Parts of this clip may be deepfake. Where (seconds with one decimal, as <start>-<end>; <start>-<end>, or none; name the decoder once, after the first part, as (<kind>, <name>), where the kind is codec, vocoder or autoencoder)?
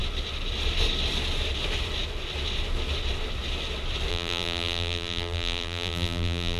4.1-6.6 (vocoder, BigVGAN v2)